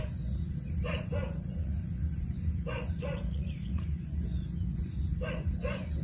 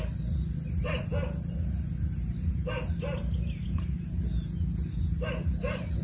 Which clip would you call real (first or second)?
second